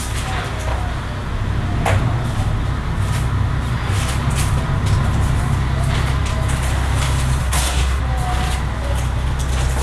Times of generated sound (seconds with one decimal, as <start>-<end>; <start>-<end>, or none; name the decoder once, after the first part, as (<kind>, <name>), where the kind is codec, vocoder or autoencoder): 7.4-8.0 (codec, SNAC)